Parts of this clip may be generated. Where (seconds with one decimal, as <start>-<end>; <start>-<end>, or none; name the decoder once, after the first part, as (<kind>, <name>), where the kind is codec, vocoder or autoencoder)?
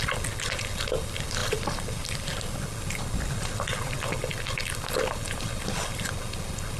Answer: none